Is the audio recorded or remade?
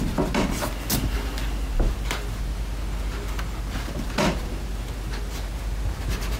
recorded